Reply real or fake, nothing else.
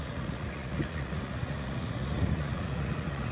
fake